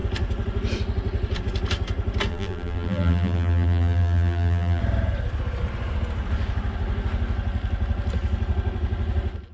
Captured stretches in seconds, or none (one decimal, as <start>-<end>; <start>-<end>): 0.0-2.3; 4.8-9.5